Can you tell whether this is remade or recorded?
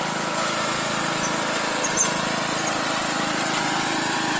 recorded